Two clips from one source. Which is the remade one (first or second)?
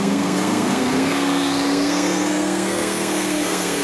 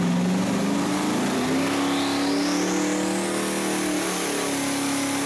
first